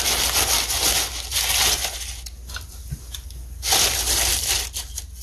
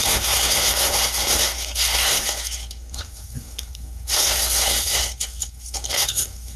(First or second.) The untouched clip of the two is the first